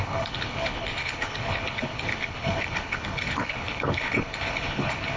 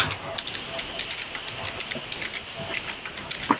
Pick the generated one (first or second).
first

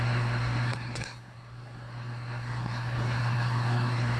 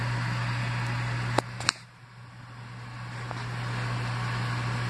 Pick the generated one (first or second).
first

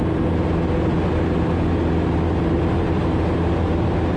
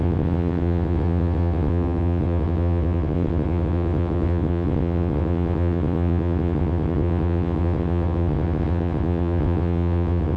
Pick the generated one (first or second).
second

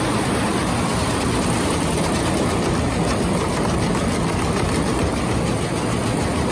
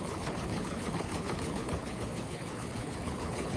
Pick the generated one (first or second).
second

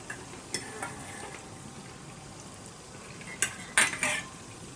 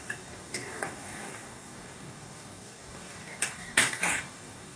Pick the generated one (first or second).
second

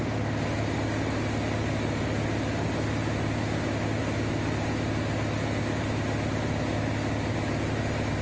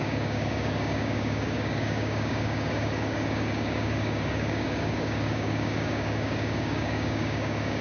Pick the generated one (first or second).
second